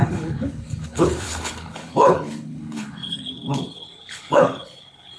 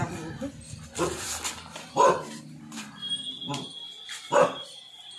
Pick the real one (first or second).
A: second